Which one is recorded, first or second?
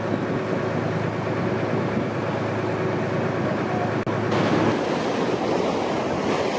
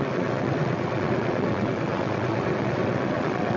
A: first